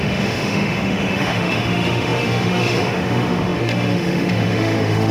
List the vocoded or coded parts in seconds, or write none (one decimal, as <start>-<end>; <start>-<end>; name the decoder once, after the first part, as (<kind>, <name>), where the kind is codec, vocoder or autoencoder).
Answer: 0.0-5.1 (autoencoder, DAC-VAE)